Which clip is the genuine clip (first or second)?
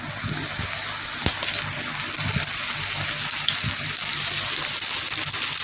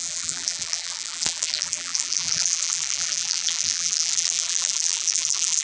first